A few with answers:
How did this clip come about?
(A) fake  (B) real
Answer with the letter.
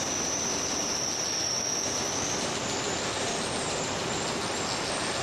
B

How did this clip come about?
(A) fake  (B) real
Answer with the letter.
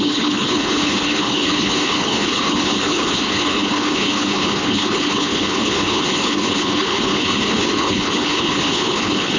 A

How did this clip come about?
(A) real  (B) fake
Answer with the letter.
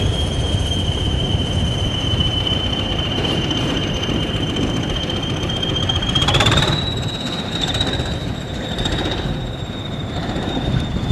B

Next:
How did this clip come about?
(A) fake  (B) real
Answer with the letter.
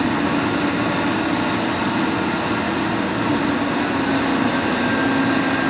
B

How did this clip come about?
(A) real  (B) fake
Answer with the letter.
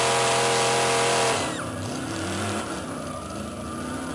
A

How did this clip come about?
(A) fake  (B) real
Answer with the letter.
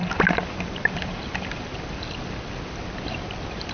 B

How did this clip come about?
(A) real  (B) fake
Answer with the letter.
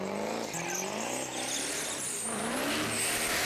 A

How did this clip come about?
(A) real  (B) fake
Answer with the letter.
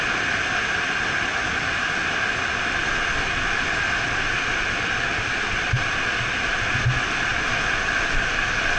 A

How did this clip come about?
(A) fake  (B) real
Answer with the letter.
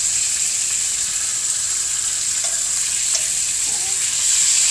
A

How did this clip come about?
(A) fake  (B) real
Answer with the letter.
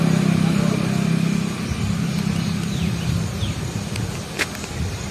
B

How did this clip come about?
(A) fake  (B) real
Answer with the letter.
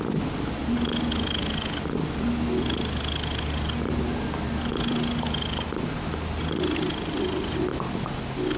B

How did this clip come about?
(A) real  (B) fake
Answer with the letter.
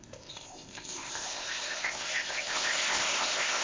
B